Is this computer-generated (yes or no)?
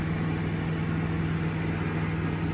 no